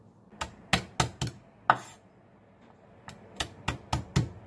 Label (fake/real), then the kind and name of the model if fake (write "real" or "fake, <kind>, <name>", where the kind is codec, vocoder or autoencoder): real